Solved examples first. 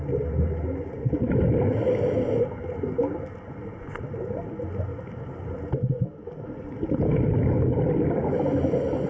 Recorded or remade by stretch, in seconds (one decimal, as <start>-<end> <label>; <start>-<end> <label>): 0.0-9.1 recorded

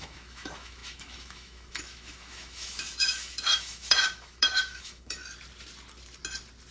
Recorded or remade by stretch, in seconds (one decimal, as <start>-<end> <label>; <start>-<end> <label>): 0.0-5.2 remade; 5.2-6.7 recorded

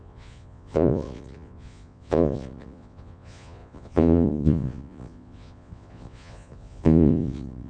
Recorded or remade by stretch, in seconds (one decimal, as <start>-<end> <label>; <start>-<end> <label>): 0.0-7.7 remade